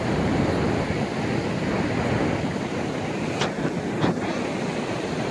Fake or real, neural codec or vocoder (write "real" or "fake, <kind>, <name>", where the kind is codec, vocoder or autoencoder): real